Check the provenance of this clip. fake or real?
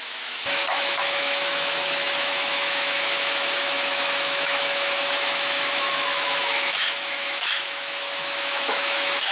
fake